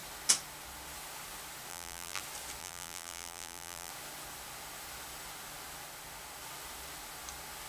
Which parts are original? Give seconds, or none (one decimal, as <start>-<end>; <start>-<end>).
0.0-1.7; 2.2-2.6; 3.9-7.7